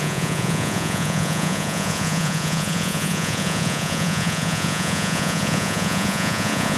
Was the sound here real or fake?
fake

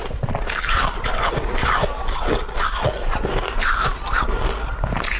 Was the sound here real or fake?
real